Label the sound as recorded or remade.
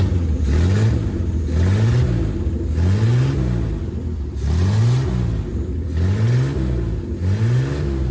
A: recorded